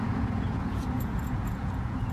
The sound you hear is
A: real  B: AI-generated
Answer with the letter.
B